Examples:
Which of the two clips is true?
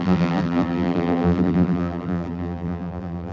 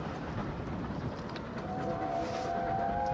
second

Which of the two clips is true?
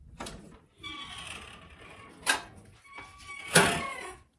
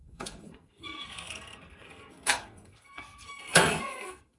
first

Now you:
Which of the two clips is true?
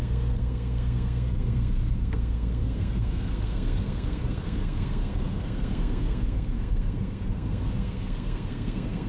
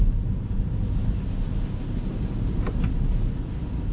second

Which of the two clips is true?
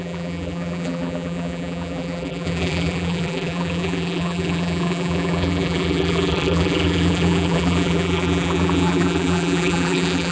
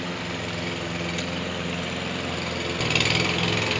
second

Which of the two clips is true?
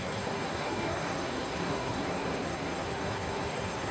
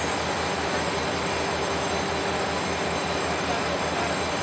second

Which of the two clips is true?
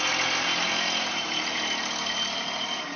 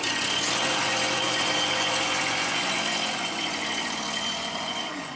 first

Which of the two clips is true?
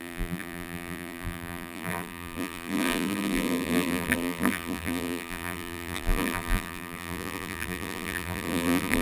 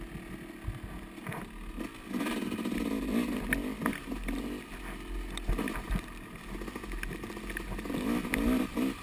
second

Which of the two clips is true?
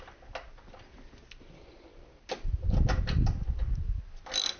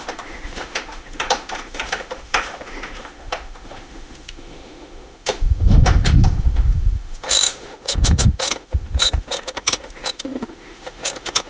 first